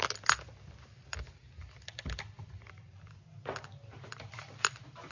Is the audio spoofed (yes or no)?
no